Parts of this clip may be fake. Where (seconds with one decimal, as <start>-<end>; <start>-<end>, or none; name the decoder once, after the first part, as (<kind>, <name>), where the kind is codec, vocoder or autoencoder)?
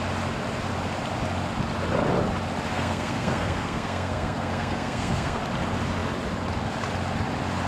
2.7-5.4 (codec, SNAC)